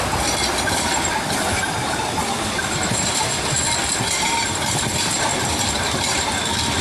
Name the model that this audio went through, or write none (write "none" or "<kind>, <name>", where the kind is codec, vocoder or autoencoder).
none